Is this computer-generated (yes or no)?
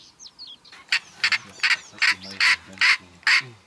no